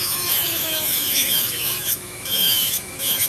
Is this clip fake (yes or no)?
yes